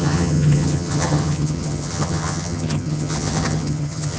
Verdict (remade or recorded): remade